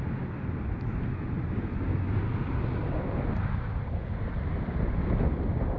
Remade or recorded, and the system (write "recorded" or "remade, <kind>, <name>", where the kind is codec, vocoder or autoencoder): recorded